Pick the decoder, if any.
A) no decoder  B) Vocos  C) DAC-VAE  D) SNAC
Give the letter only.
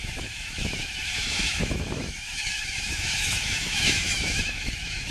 C